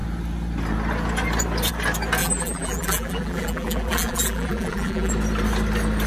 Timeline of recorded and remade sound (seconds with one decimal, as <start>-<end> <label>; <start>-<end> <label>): 0.0-2.2 recorded; 2.2-5.1 remade; 5.1-6.1 recorded